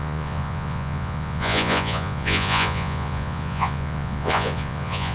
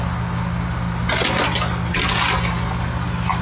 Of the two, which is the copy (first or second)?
first